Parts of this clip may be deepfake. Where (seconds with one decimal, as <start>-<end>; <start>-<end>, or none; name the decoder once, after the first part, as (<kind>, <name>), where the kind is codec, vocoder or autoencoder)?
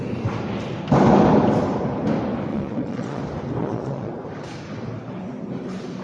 2.5-3.2 (vocoder, Vocos); 3.6-4.1